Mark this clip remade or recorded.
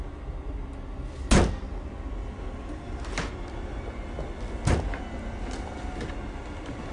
recorded